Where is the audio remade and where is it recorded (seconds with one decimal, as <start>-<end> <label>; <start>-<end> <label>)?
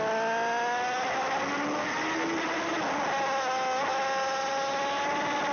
0.0-5.5 recorded